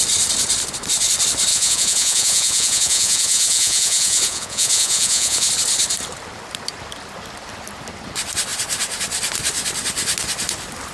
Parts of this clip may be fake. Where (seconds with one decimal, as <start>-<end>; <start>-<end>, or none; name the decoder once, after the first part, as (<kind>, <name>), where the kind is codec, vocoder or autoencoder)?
1.5-5.5 (vocoder, Vocos)